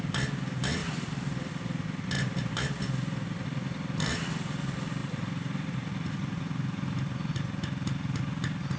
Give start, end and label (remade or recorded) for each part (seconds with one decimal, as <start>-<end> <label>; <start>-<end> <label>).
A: 0.0-0.8 recorded; 0.8-2.5 remade; 2.5-5.0 recorded; 5.0-7.3 remade; 7.3-8.8 recorded